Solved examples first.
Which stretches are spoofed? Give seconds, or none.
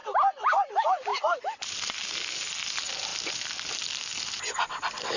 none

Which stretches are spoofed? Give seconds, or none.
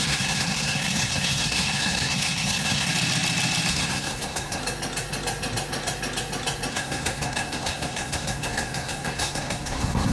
0.0-2.9 (codec, SNAC); 3.7-4.6; 6.7-10.1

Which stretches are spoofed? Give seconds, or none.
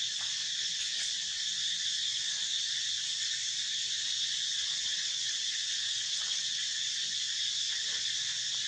4.5-6.9 (vocoder, WaveNeXt)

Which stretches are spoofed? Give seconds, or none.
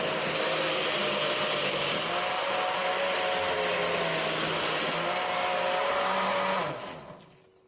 none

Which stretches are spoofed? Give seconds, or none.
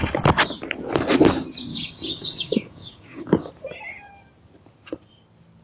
1.7-3.5 (codec, DAC)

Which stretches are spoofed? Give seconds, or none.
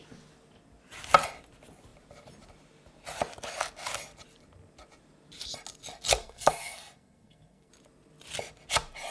6.2-7.7 (codec, SNAC)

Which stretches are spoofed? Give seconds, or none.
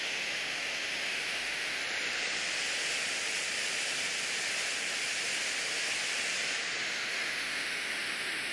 0.0-1.8 (autoencoder, DAC-VAE); 6.8-8.5